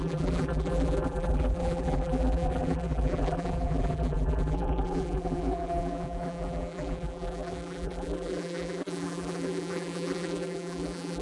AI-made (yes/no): yes